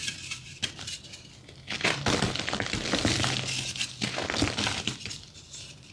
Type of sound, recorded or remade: recorded